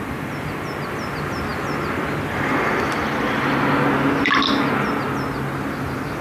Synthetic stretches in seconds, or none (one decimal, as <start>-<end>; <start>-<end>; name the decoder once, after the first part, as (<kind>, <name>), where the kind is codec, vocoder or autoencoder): none